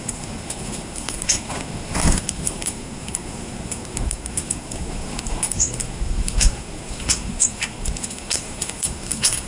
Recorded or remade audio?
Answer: remade